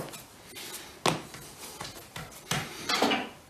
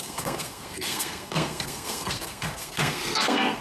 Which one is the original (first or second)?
first